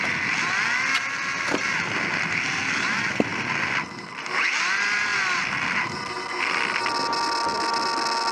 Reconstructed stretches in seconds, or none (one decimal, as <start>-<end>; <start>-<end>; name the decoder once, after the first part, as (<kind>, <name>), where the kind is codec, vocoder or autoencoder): none